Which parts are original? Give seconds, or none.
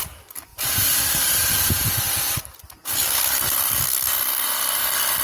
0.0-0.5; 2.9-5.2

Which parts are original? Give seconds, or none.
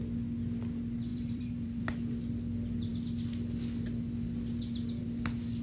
0.0-1.1; 1.8-5.6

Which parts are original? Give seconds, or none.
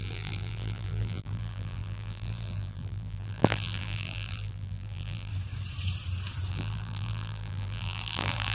5.3-6.5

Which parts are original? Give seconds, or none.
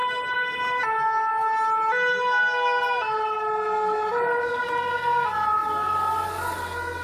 0.0-7.0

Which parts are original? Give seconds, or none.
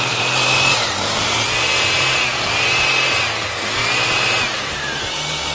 none